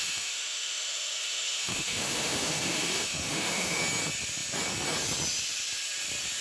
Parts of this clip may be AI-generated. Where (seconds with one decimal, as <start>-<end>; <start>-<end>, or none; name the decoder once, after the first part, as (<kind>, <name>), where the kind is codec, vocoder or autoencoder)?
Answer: 0.0-3.8 (autoencoder, DAC-VAE)